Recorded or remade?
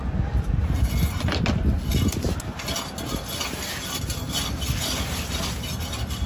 recorded